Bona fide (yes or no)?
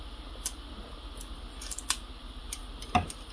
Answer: yes